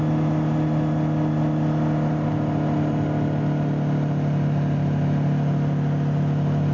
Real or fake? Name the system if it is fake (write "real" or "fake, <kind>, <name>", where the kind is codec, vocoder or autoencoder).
real